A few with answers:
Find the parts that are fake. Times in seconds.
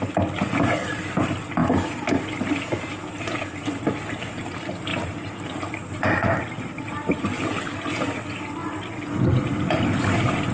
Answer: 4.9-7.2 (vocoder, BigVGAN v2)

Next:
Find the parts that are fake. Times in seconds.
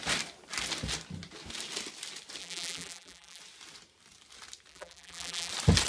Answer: 2.4-3.4 (vocoder, BigVGAN v2); 4.7-5.5